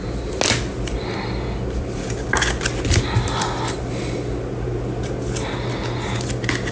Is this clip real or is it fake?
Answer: real